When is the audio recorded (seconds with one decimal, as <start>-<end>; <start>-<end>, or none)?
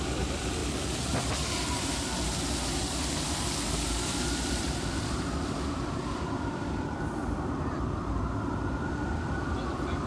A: 0.6-4.6